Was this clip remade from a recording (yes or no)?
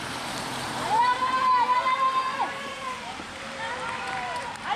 yes